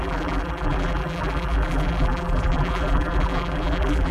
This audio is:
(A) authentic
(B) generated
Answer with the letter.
B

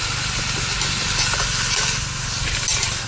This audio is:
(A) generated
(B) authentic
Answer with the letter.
B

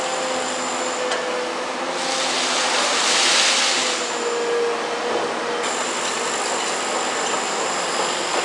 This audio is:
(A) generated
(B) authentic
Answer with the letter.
B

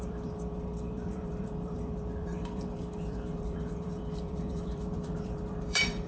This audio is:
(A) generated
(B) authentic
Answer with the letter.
A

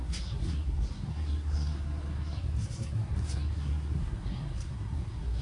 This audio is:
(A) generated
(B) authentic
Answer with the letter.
A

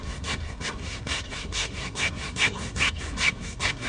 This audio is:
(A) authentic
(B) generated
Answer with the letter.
B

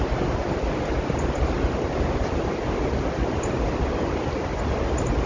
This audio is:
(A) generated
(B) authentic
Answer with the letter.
B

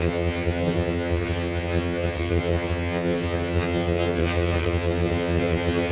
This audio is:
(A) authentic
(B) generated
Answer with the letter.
B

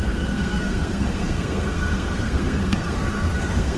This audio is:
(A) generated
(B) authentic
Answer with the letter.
A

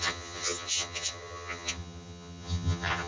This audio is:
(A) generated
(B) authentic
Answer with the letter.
A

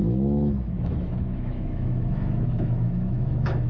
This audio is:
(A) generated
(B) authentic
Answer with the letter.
A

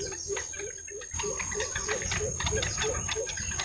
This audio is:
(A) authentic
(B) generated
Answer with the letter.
A